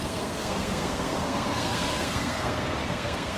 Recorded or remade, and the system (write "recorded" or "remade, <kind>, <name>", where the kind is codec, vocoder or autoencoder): remade, codec, SNAC